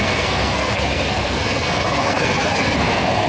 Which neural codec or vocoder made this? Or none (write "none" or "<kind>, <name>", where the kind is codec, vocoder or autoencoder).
codec, SNAC